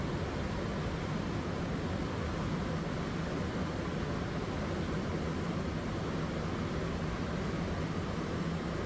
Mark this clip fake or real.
real